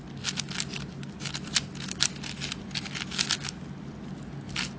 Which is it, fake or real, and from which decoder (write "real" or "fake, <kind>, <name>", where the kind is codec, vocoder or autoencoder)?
real